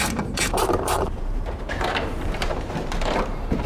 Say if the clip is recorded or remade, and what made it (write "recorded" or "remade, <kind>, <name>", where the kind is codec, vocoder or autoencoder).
remade, vocoder, BigVGAN v2